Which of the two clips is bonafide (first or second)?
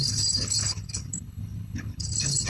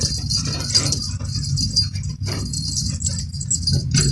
second